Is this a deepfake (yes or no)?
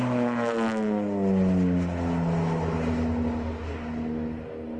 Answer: no